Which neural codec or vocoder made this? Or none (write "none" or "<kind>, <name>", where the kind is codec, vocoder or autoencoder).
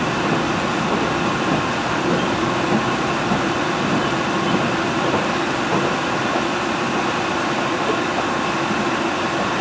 none